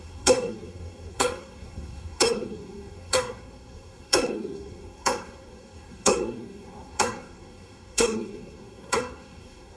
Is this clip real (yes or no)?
no